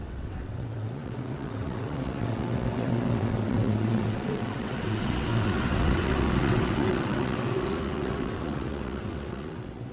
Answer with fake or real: fake